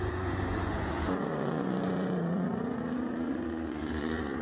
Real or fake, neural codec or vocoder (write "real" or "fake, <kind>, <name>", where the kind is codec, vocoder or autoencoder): fake, vocoder, Vocos